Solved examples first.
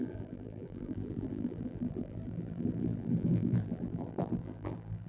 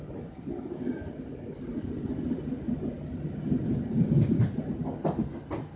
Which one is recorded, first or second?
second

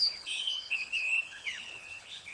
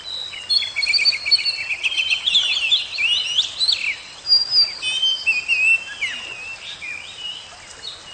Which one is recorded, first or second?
second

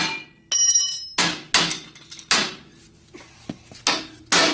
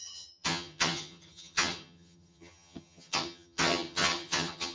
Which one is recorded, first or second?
first